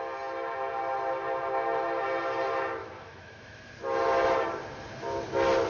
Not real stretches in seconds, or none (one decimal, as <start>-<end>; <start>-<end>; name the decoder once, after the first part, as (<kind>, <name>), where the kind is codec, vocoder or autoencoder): 2.8-3.7 (autoencoder, DAC-VAE)